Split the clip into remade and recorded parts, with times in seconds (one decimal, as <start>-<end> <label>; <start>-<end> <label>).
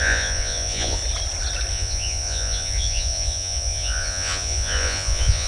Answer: 0.0-1.0 remade; 1.0-1.7 recorded; 1.7-5.5 remade